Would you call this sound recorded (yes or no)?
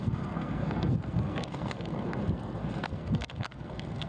no